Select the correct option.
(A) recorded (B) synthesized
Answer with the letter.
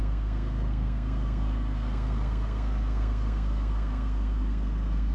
B